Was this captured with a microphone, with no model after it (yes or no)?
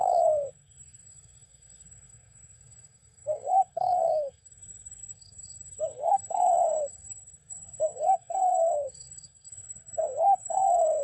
no